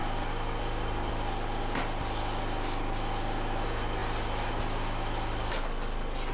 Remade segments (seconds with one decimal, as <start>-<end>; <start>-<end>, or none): none